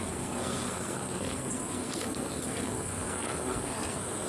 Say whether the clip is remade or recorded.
remade